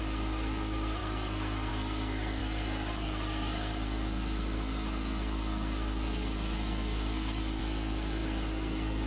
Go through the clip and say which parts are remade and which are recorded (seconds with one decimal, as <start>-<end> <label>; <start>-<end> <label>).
0.0-9.1 remade